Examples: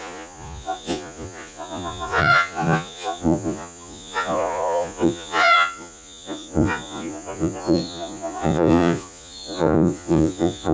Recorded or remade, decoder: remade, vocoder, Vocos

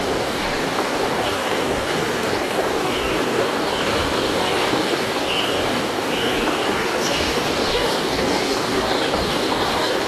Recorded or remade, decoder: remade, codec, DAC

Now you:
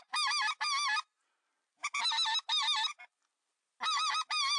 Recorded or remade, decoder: recorded